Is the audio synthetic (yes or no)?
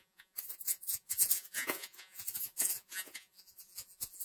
yes